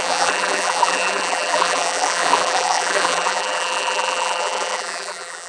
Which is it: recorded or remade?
remade